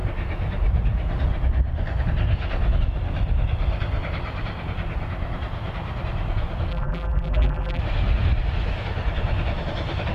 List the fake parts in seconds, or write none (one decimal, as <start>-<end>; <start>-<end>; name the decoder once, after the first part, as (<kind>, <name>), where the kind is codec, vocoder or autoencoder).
6.7-7.8 (vocoder, BigVGAN v2)